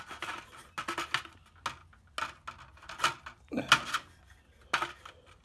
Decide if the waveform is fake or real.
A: real